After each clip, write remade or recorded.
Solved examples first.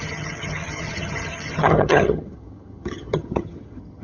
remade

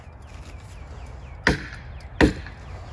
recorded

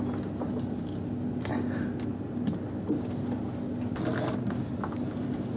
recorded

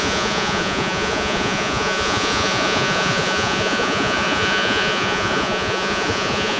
remade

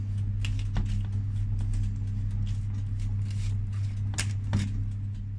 recorded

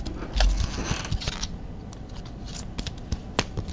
recorded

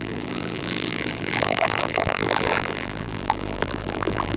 remade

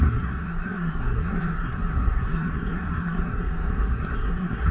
remade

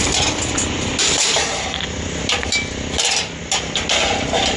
recorded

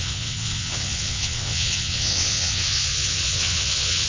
remade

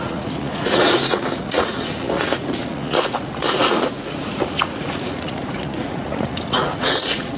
remade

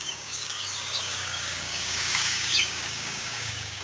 remade